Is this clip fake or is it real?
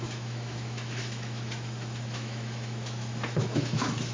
fake